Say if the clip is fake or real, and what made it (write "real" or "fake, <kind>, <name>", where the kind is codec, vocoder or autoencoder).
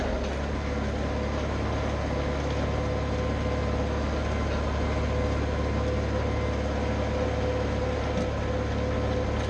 real